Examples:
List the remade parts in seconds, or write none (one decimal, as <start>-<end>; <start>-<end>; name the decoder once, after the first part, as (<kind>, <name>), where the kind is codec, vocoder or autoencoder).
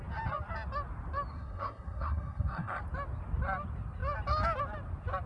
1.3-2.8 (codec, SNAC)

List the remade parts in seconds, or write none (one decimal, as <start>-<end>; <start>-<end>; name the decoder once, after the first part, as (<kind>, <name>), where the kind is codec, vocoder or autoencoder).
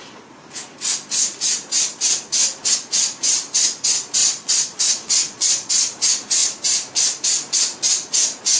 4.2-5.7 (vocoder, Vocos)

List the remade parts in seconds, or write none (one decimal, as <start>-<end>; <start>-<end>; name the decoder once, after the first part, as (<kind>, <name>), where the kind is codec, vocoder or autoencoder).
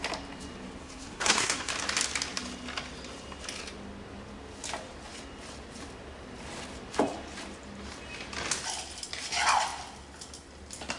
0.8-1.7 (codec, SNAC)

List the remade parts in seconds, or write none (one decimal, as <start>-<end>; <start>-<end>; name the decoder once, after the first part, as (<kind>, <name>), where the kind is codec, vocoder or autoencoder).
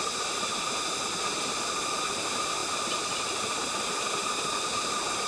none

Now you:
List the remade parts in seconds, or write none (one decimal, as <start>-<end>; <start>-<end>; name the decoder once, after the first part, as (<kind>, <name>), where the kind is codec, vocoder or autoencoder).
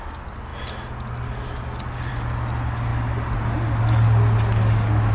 none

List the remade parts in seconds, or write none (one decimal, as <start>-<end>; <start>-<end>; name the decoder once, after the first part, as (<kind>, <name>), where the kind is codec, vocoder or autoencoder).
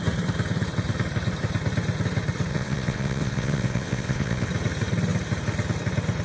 2.5-4.5 (vocoder, WaveNeXt)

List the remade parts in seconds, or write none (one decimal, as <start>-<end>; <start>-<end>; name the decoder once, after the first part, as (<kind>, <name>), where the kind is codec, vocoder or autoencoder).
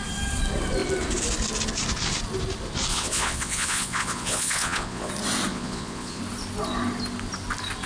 2.9-5.1 (vocoder, Vocos); 5.5-6.2